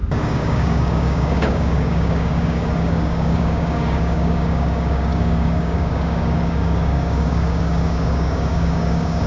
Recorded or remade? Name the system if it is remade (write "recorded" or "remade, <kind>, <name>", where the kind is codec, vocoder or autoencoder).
remade, codec, DAC